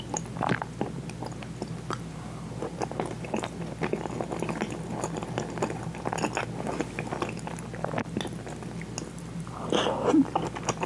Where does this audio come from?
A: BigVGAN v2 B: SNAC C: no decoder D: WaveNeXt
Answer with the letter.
C